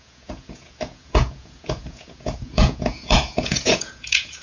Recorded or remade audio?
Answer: remade